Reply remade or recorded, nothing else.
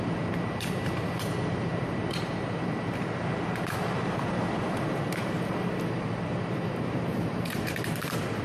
remade